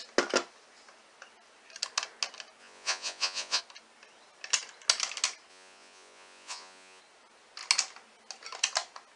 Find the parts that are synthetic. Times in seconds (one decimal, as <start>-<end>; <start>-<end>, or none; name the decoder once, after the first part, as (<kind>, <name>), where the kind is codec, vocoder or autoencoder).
2.6-3.6 (vocoder, Vocos); 5.5-7.0